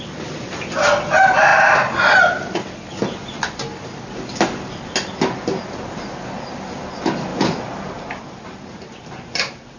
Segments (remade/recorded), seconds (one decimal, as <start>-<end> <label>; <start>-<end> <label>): 0.0-7.3 recorded; 7.3-9.8 remade